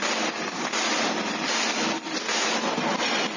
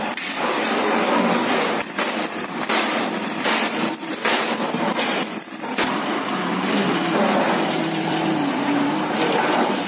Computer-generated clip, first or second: second